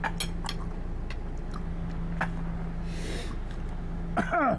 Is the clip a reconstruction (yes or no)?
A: no